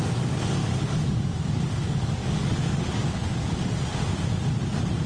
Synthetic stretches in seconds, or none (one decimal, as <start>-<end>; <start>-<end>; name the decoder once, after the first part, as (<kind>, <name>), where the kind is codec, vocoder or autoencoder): 0.6-3.7 (codec, DAC)